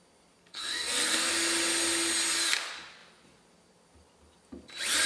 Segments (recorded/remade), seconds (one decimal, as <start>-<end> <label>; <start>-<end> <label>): 0.0-0.4 recorded; 0.4-1.3 remade; 1.3-5.1 recorded